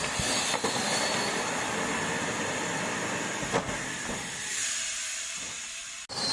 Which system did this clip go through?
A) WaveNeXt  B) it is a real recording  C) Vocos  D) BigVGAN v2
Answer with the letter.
B